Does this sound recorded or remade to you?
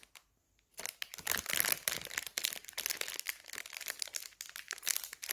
recorded